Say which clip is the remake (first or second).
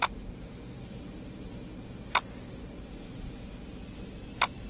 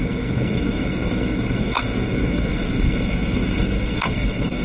second